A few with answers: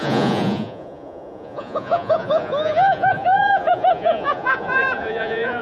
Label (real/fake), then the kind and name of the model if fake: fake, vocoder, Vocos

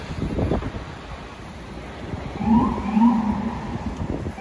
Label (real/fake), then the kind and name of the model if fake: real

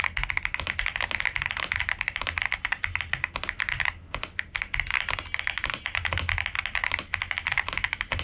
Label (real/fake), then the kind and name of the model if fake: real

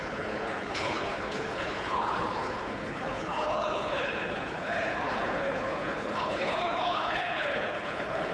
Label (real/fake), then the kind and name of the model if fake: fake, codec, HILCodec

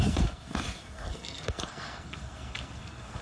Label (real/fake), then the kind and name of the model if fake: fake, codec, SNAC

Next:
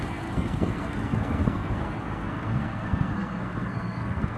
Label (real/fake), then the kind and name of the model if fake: fake, codec, SNAC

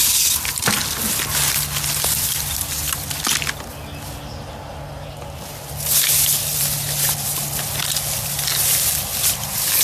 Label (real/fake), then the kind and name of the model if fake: real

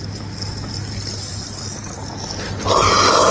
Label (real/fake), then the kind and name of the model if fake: real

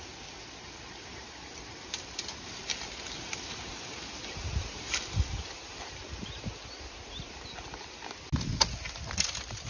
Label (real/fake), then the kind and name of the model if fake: real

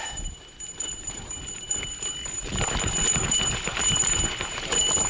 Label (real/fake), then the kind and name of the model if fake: fake, vocoder, BigVGAN v2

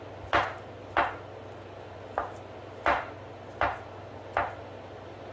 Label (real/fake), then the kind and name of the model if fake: real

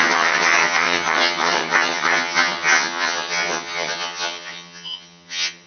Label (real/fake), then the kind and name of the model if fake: fake, vocoder, HiFi-GAN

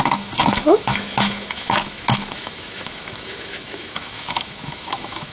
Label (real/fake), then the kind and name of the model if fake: fake, autoencoder, DAC-VAE